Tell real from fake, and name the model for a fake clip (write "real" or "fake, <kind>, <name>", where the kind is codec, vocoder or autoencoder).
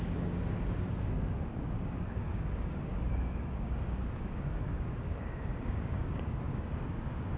fake, codec, DAC